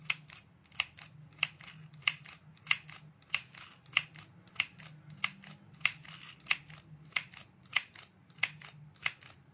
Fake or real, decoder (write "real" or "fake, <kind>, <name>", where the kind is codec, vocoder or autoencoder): real